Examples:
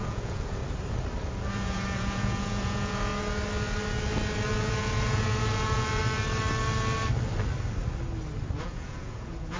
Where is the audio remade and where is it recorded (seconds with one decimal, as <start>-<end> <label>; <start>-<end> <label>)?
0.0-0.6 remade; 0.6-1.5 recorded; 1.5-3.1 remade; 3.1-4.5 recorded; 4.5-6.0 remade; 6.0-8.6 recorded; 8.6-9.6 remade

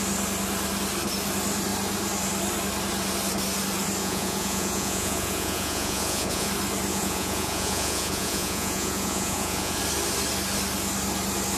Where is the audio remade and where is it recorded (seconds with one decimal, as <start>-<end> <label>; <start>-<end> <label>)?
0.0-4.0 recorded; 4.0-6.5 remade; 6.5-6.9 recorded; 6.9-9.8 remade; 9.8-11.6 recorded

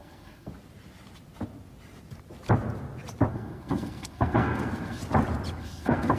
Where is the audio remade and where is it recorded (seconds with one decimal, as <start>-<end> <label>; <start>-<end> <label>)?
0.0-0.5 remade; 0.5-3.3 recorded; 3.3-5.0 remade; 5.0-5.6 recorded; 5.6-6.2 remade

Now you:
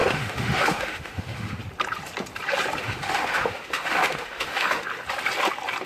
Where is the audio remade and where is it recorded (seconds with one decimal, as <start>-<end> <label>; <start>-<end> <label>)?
0.0-1.6 remade; 1.6-2.8 recorded; 2.8-4.8 remade; 4.8-5.9 recorded

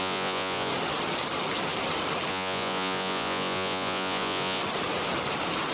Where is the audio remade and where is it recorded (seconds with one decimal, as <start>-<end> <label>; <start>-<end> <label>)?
0.0-0.7 remade; 0.7-2.3 recorded; 2.3-4.6 remade; 4.6-5.7 recorded

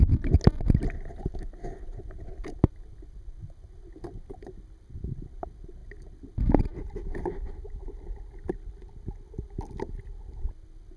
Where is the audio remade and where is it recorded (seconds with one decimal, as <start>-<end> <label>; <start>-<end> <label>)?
0.0-11.0 recorded

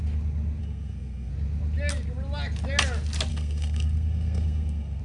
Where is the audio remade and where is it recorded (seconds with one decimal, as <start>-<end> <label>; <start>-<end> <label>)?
0.0-0.6 recorded; 0.6-1.3 remade; 1.3-3.3 recorded; 3.3-5.0 remade

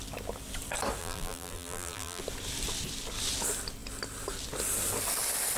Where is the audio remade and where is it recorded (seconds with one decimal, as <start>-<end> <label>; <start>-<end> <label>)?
0.0-1.0 recorded; 1.0-2.2 remade; 2.2-5.6 recorded